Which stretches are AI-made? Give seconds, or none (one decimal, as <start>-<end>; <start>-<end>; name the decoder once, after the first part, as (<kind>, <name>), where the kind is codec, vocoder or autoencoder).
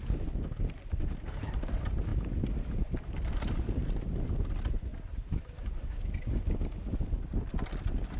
none